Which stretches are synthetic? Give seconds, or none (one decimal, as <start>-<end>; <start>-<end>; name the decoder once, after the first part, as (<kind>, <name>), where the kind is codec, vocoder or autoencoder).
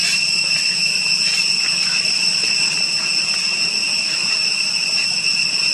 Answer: none